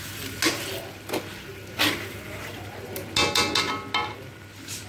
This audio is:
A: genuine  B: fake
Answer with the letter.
A